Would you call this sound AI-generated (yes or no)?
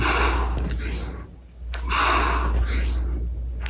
no